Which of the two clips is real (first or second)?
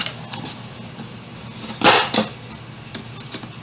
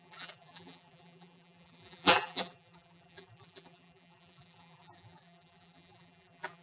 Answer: first